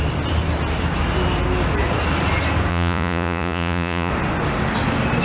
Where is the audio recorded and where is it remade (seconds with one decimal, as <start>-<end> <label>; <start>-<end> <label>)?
0.0-2.7 recorded; 2.7-4.1 remade; 4.1-5.2 recorded